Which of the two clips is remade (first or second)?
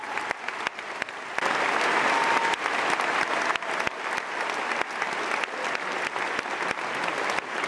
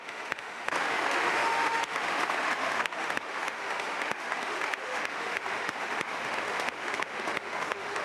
second